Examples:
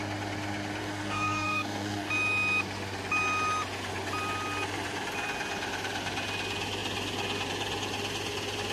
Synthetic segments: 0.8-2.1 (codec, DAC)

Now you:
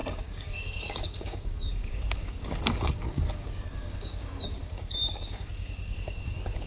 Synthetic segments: 0.0-6.7 (codec, DAC)

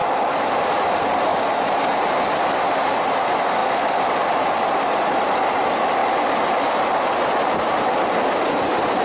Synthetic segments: none

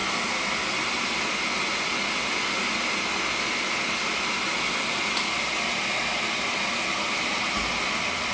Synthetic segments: none

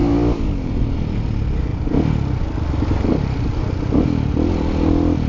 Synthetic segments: 0.0-0.7 (codec, DAC)

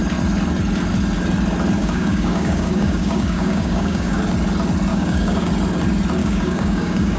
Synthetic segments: 1.8-4.2 (codec, DAC); 4.9-5.5; 6.2-7.2

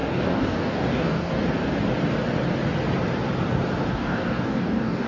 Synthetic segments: 0.0-1.3 (codec, DAC); 3.9-5.1

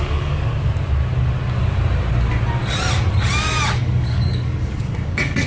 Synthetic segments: 0.0-0.5 (codec, DAC); 3.8-5.5